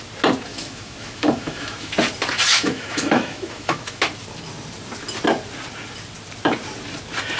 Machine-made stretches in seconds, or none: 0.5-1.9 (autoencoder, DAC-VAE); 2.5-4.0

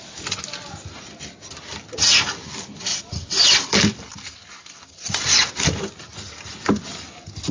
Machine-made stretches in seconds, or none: 2.9-5.1 (vocoder, BigVGAN v2)

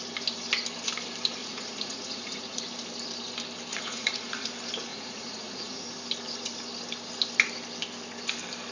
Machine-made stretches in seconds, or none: 1.4-2.6 (vocoder, Vocos); 3.7-4.5; 4.9-5.8

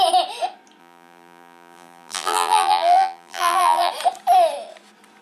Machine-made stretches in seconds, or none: 0.8-3.9 (vocoder, BigVGAN v2)